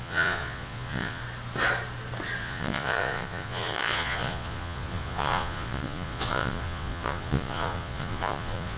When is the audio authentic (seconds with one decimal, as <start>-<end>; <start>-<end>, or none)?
1.2-2.4